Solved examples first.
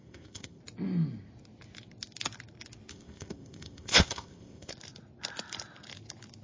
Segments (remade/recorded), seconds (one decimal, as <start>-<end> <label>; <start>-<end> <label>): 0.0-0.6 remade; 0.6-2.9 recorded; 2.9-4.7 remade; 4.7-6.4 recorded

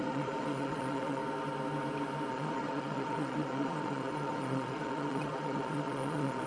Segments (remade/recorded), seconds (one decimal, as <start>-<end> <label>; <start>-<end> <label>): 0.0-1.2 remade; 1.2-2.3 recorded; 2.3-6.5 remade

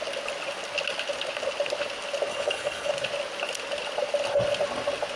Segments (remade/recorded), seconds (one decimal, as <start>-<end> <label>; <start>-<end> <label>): 0.0-2.3 recorded; 2.3-2.9 remade; 2.9-5.2 recorded